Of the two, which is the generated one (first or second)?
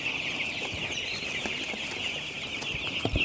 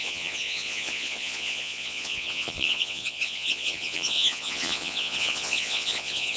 second